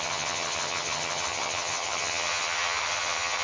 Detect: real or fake fake